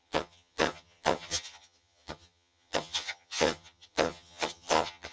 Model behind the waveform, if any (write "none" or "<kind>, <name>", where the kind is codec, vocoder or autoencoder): vocoder, HiFi-GAN